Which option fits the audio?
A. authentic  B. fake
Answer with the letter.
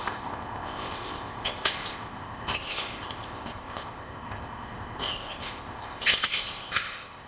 B